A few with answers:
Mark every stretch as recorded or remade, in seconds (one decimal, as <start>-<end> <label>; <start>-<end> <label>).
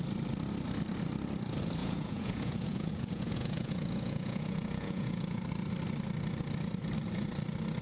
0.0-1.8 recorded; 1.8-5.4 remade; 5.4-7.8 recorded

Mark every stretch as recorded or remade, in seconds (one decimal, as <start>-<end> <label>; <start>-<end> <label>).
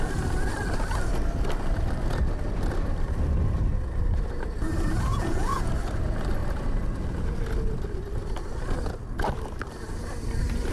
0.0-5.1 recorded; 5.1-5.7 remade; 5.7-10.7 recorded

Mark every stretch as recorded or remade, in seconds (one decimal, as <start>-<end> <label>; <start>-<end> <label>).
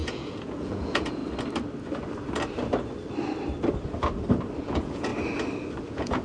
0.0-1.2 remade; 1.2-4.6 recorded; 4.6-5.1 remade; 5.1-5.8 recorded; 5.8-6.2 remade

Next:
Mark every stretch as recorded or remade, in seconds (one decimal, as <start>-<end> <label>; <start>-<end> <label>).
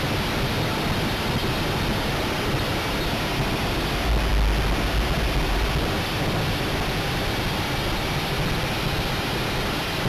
0.0-10.1 recorded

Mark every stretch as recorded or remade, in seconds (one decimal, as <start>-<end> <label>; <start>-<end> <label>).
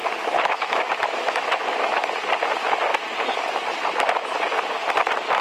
0.0-2.0 remade; 2.0-5.4 recorded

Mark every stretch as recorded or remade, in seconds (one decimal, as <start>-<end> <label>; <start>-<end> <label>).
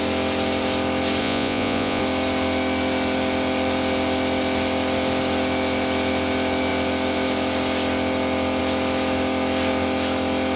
0.0-1.2 recorded; 1.2-2.0 remade; 2.0-10.6 recorded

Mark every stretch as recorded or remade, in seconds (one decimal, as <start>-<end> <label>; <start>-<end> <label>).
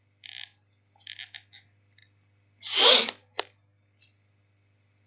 0.0-5.1 recorded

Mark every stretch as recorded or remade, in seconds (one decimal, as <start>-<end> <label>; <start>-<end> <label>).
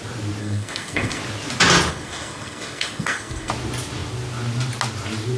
0.0-0.4 recorded; 0.4-1.2 remade; 1.2-1.9 recorded; 1.9-3.5 remade; 3.5-5.4 recorded